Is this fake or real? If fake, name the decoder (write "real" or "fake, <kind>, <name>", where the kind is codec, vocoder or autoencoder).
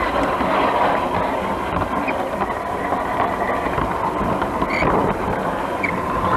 real